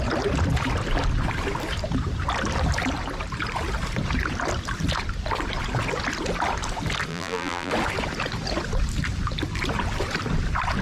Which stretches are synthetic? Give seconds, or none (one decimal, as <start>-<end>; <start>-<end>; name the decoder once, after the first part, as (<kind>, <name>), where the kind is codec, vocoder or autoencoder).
7.1-7.7 (vocoder, BigVGAN v2)